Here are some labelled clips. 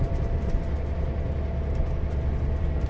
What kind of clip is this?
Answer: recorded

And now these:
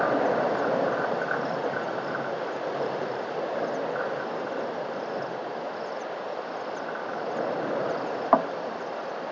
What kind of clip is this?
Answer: recorded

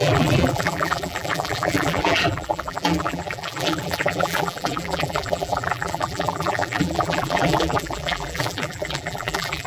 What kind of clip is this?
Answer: remade